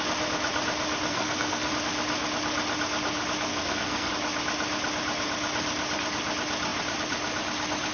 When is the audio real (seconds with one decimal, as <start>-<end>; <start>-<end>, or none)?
0.0-1.1; 1.7-3.5; 4.1-7.9